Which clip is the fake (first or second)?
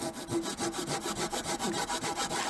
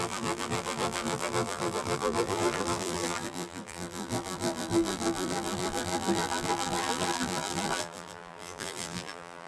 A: second